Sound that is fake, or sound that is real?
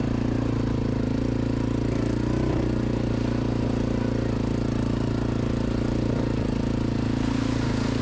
real